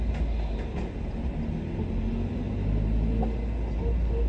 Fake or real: real